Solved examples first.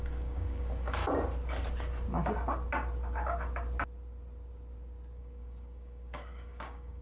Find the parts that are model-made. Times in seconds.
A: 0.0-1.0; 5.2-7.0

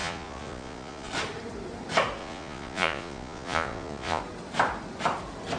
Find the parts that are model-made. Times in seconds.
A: 0.0-1.1; 2.2-4.2

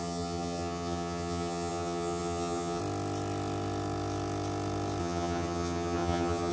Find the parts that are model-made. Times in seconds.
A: 0.0-2.8; 5.0-6.5

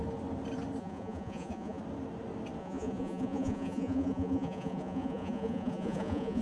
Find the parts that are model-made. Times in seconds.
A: 0.8-1.8; 2.6-6.4

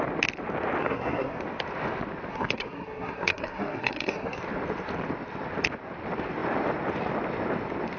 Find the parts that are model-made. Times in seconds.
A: 0.8-1.4; 2.3-4.4